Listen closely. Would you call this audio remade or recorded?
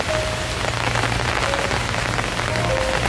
recorded